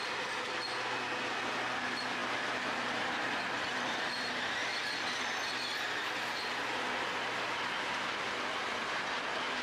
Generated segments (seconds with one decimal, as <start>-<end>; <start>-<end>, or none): none